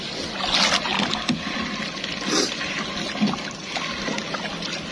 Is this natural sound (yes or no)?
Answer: yes